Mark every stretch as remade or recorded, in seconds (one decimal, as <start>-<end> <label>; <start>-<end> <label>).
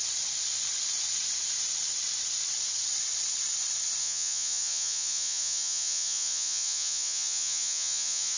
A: 0.0-4.0 recorded; 4.0-8.4 remade